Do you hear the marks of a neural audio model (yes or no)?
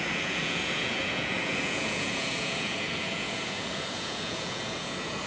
yes